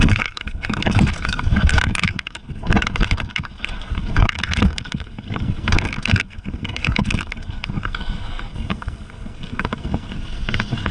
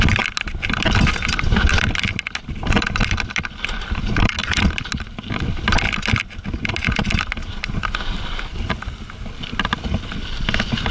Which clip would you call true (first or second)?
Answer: second